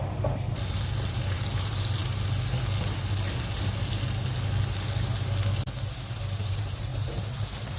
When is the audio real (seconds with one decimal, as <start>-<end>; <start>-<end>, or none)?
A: 2.0-6.4